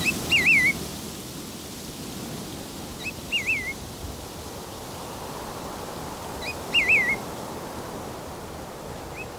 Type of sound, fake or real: real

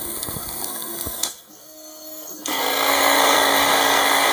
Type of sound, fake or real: fake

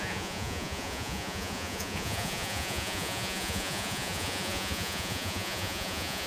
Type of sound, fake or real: fake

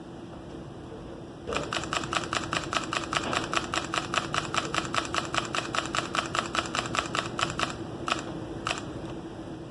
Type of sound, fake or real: fake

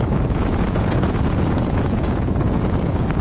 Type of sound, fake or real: fake